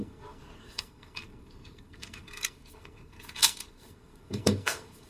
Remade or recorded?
remade